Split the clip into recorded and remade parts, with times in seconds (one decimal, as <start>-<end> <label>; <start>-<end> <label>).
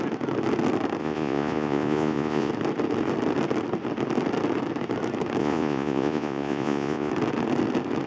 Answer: 0.0-1.0 recorded; 1.0-2.5 remade; 2.5-5.4 recorded; 5.4-7.1 remade; 7.1-8.1 recorded